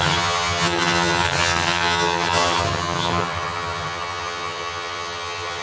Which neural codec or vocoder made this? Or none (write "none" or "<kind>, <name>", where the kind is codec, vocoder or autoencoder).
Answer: vocoder, HiFi-GAN